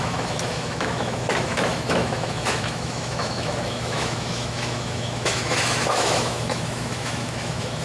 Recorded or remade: remade